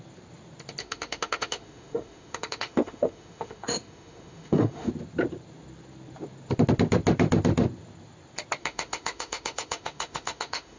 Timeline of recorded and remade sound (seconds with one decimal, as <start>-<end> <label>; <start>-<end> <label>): 0.0-0.8 recorded; 0.8-4.9 remade; 4.9-8.6 recorded; 8.6-10.8 remade